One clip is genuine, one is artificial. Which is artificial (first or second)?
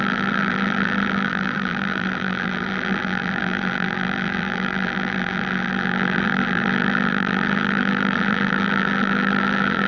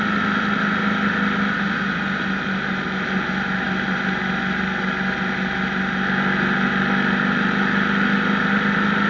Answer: first